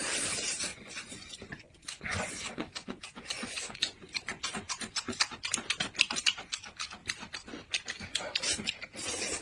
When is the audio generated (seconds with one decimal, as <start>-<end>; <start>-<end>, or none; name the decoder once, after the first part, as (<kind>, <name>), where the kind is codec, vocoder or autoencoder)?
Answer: 0.7-5.2 (vocoder, Vocos)